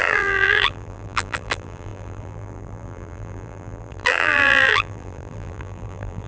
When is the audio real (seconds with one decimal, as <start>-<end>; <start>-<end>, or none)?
none